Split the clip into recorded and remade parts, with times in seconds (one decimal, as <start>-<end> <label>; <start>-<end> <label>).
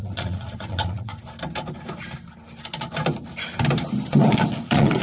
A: 0.0-1.1 remade; 1.1-4.1 recorded; 4.1-5.0 remade